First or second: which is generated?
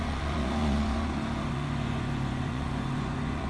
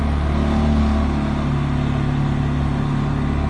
first